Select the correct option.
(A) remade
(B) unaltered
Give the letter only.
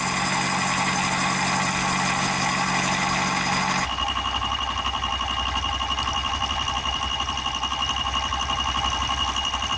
B